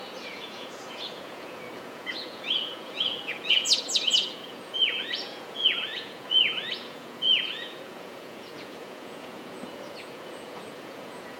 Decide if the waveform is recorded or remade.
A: remade